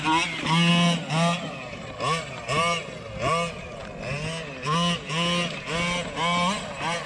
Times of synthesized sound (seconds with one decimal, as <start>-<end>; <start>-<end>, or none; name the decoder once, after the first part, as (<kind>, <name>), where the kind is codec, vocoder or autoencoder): none